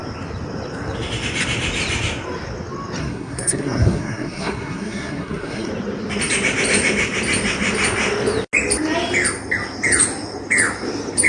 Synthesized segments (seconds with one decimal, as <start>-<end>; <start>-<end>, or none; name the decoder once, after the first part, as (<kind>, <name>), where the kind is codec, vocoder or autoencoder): 3.0-5.7 (codec, SNAC)